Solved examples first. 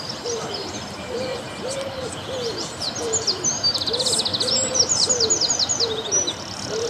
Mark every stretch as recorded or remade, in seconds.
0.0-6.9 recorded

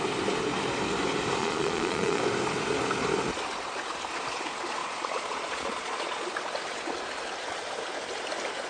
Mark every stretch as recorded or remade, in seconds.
0.0-1.4 recorded; 1.4-2.2 remade; 2.2-4.8 recorded; 4.8-6.3 remade; 6.3-8.7 recorded

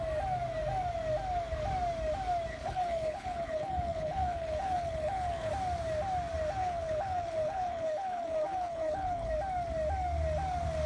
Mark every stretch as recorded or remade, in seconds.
0.0-2.5 recorded; 2.5-5.5 remade; 5.5-6.6 recorded; 6.6-9.3 remade; 9.3-10.9 recorded

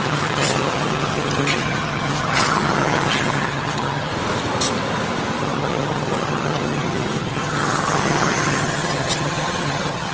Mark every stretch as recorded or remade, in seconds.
0.0-4.1 remade; 4.1-5.4 recorded; 5.4-10.1 remade

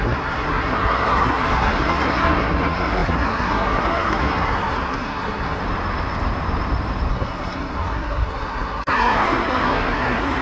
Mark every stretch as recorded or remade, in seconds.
0.0-5.6 remade; 5.6-7.1 recorded; 7.1-10.4 remade

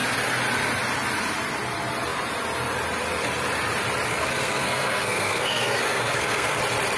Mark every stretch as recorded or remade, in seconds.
0.0-4.1 recorded; 4.1-6.6 remade; 6.6-7.0 recorded

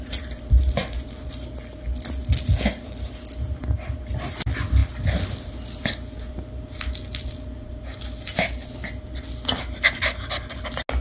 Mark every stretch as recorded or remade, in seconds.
0.0-11.0 recorded

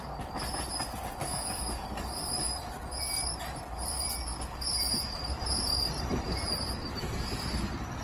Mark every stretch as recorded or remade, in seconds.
0.0-1.2 recorded; 1.2-2.3 remade; 2.3-8.0 recorded